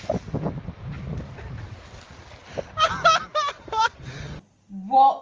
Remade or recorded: recorded